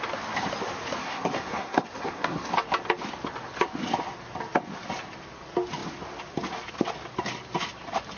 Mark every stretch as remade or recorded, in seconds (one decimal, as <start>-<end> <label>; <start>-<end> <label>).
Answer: 0.0-1.0 recorded; 1.0-2.5 remade; 2.5-8.2 recorded